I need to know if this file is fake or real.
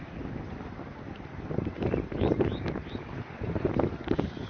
real